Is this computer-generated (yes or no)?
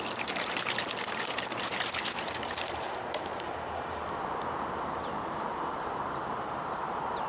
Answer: yes